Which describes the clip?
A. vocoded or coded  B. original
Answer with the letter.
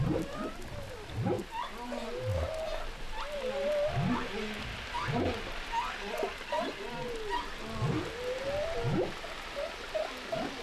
B